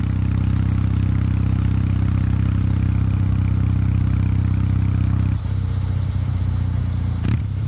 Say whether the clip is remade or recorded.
recorded